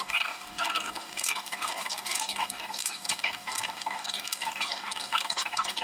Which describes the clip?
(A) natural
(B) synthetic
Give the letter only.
B